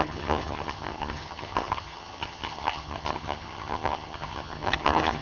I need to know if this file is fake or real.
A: fake